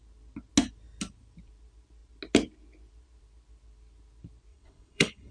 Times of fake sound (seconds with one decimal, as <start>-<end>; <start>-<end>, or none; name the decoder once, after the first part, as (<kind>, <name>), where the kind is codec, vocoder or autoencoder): 4.5-5.3 (vocoder, WaveNeXt)